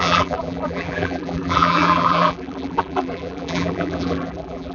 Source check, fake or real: fake